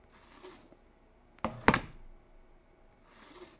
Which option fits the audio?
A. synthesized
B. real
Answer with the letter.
B